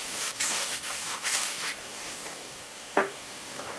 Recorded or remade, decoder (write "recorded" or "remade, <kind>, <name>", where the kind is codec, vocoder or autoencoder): remade, codec, DAC